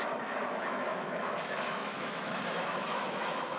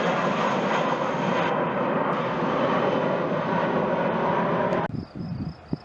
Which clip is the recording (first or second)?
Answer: second